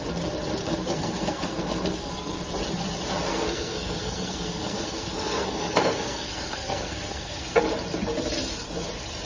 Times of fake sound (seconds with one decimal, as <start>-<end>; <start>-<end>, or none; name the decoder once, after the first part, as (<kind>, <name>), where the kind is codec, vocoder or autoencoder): 0.6-2.4 (codec, SNAC); 3.3-7.6